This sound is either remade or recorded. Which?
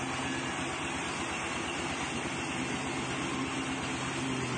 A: recorded